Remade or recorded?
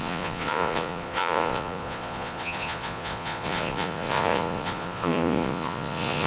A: remade